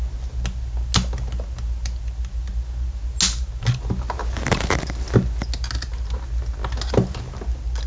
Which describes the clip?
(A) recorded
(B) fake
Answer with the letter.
A